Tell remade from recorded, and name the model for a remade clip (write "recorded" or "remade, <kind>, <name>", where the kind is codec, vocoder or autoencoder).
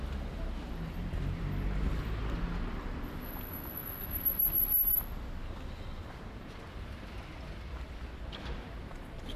recorded